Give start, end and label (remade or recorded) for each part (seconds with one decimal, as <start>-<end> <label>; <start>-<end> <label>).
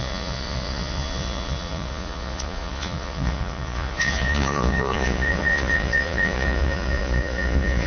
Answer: 0.0-7.9 remade